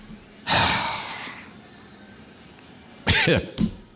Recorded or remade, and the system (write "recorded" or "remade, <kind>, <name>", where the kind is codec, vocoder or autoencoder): remade, vocoder, BigVGAN v2